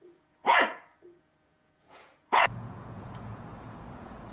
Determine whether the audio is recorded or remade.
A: remade